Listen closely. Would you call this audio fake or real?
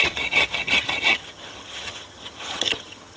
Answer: fake